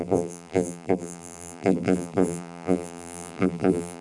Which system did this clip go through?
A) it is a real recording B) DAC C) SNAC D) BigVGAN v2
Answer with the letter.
D